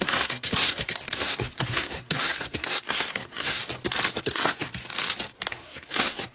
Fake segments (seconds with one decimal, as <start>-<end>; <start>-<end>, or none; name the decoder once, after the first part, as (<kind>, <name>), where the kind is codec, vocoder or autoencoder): 0.0-3.6 (codec, SNAC); 4.2-4.7; 5.5-6.3